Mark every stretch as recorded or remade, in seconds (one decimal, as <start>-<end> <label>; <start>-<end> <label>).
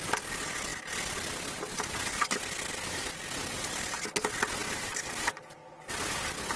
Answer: 0.0-6.6 recorded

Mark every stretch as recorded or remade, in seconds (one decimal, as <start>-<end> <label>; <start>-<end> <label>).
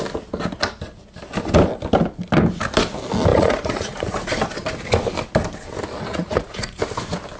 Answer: 0.0-3.3 recorded; 3.3-4.1 remade; 4.1-6.1 recorded; 6.1-6.8 remade; 6.8-7.4 recorded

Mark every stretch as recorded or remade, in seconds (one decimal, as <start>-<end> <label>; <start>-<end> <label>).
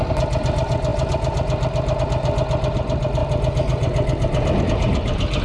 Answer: 0.0-5.4 recorded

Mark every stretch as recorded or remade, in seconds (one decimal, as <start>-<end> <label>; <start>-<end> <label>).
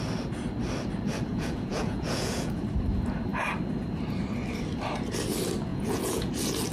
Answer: 0.0-1.3 recorded; 1.3-2.6 remade; 2.6-5.7 recorded; 5.7-6.3 remade; 6.3-6.7 recorded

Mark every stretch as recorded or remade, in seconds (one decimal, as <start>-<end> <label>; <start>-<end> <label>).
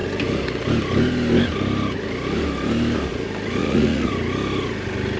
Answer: 0.0-3.6 recorded; 3.6-4.1 remade; 4.1-5.2 recorded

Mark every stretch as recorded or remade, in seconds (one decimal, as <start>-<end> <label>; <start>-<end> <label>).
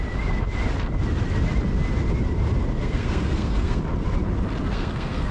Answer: 0.0-2.8 recorded; 2.8-3.8 remade; 3.8-4.6 recorded; 4.6-5.3 remade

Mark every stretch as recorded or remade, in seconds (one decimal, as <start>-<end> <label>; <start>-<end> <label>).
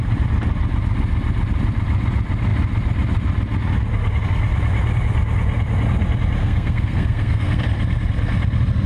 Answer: 0.0-6.4 recorded; 6.4-7.6 remade; 7.6-8.9 recorded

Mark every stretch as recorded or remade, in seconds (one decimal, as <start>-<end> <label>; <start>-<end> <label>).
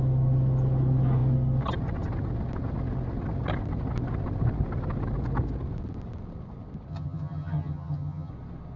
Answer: 0.0-6.9 recorded; 6.9-8.3 remade; 8.3-8.8 recorded